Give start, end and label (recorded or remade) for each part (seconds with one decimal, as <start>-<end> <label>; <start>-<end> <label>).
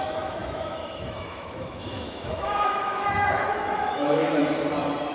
0.0-4.4 remade; 4.4-5.1 recorded